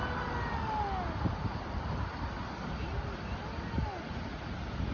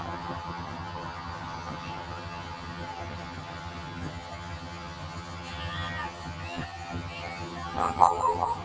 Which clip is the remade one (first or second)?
second